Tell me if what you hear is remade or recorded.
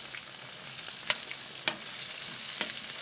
recorded